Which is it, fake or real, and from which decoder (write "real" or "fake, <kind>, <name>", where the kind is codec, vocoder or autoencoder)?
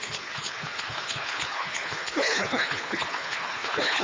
fake, codec, HILCodec